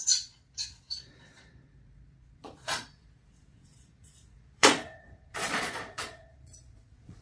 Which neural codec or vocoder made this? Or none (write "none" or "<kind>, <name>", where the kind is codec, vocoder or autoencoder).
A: vocoder, Vocos